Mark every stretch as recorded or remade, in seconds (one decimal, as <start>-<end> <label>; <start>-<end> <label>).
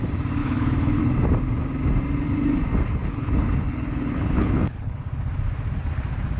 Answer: 0.0-0.4 recorded; 0.4-1.0 remade; 1.0-3.0 recorded; 3.0-5.0 remade; 5.0-6.4 recorded